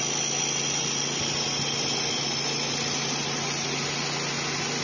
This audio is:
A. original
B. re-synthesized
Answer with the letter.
A